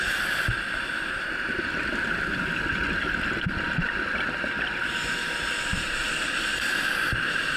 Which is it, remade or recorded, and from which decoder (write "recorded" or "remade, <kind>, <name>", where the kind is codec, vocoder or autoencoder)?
recorded